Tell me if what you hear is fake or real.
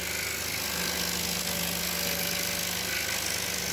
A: real